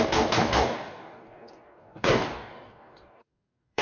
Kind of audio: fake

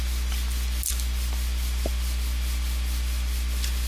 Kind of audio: real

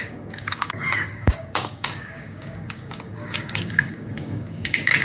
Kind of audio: fake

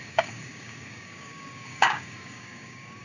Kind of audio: fake